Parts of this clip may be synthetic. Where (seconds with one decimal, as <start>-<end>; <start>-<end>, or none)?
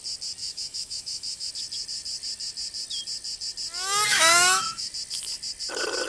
0.4-1.5; 4.1-4.9